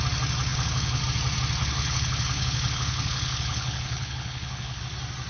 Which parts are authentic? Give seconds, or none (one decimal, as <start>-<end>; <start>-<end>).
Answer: 0.0-0.5; 1.0-1.6; 4.8-5.3